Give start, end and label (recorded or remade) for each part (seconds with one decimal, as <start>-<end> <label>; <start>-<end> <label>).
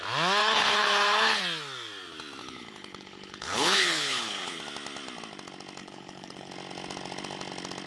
0.0-0.4 recorded; 0.4-1.4 remade; 1.4-2.4 recorded; 2.4-4.6 remade; 4.6-5.8 recorded; 5.8-6.5 remade; 6.5-7.9 recorded